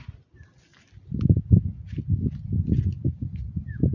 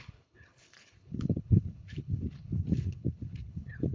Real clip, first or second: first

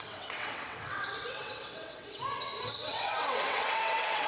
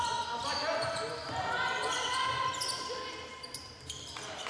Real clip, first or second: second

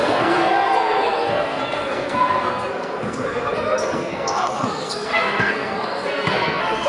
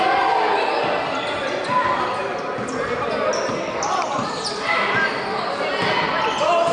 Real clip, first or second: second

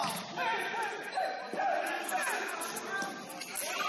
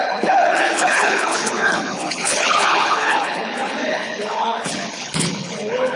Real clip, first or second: first